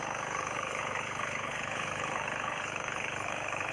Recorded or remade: remade